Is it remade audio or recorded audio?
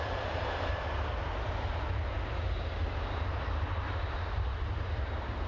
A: recorded